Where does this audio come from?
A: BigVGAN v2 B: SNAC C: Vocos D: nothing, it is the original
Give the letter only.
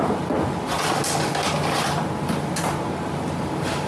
D